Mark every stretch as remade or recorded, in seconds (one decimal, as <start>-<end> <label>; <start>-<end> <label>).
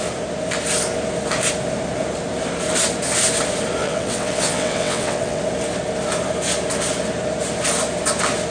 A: 0.0-3.8 recorded; 3.8-5.4 remade; 5.4-8.5 recorded